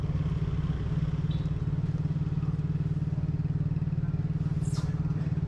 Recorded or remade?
recorded